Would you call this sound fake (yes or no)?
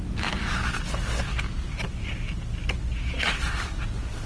no